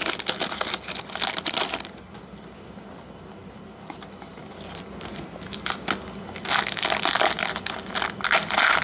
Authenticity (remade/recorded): recorded